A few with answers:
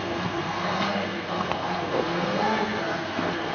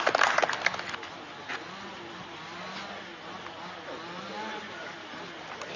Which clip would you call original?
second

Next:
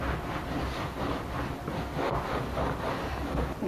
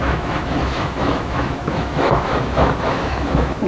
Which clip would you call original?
first